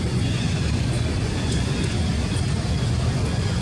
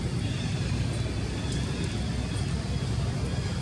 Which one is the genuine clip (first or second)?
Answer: second